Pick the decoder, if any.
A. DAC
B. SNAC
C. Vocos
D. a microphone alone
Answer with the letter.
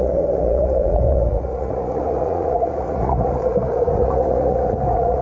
C